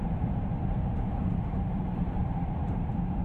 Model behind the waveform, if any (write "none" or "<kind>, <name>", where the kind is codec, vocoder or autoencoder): vocoder, BigVGAN v2